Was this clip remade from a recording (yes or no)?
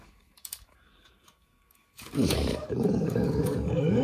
yes